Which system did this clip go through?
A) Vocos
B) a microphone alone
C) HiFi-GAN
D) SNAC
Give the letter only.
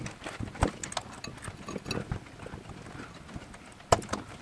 B